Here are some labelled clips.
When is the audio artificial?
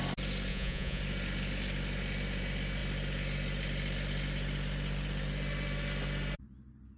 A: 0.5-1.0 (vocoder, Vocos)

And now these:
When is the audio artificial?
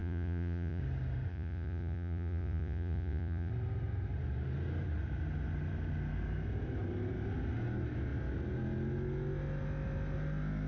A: 0.0-0.8 (vocoder, Vocos); 1.3-3.5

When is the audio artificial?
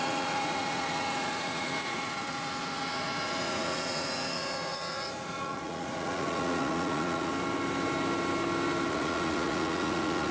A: 0.0-7.3 (vocoder, Vocos); 8.9-10.3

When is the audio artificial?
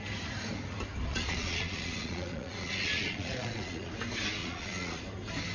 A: 1.1-3.9 (vocoder, Vocos); 4.4-5.0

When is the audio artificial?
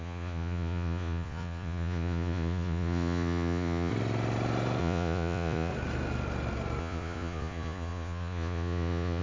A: 0.0-3.9 (vocoder, Vocos); 4.8-5.7; 6.8-9.2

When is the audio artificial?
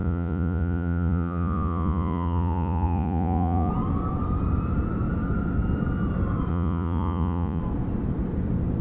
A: 0.0-3.7 (vocoder, Vocos); 6.5-7.6